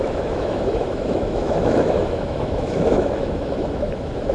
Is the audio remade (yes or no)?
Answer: yes